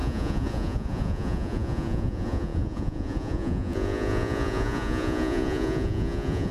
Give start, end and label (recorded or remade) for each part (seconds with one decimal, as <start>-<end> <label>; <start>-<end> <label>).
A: 0.0-6.5 remade